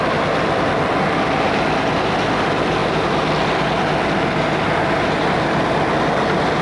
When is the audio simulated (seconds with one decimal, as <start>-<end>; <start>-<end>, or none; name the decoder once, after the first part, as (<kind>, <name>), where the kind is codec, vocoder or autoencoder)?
none